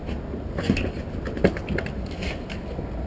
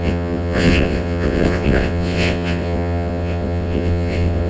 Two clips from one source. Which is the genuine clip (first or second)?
first